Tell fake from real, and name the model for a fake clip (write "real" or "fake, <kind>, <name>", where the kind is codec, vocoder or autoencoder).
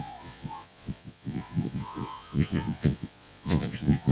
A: fake, vocoder, Vocos